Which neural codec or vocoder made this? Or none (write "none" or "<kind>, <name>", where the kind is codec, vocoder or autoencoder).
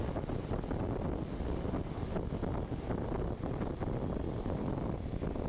vocoder, BigVGAN v2